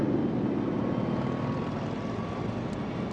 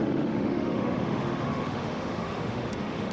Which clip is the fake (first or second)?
second